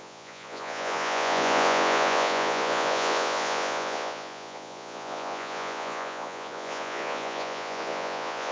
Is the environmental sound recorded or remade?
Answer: remade